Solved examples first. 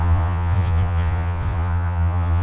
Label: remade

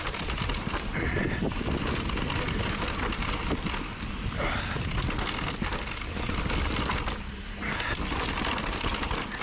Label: recorded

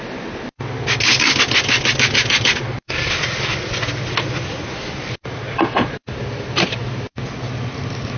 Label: recorded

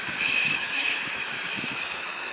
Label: remade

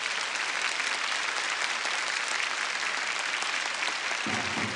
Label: recorded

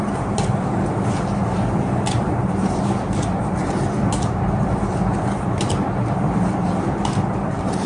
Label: remade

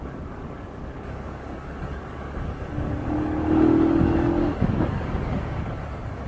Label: remade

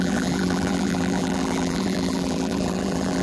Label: remade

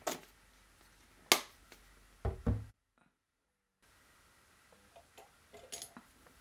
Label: recorded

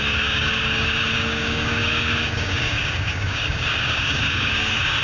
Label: remade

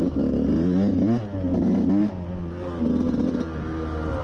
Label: recorded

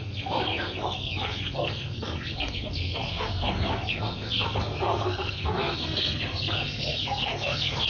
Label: remade